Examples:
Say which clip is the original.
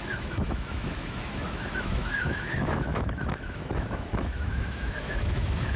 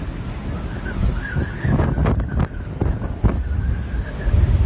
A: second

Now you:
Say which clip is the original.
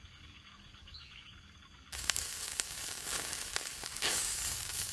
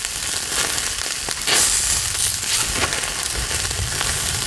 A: second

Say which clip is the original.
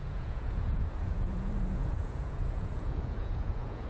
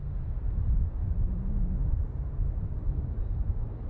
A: second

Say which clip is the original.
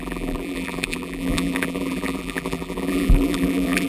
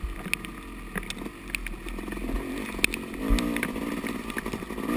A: second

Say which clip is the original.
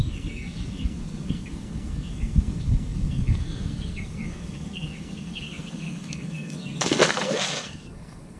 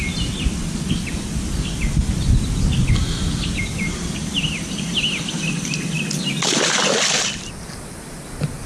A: second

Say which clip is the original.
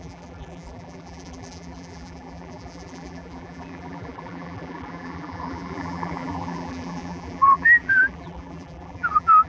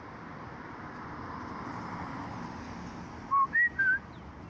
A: second